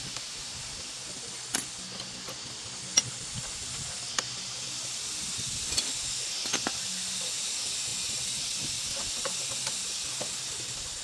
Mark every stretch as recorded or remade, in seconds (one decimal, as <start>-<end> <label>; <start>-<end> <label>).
0.0-7.9 recorded; 7.9-10.2 remade; 10.2-11.0 recorded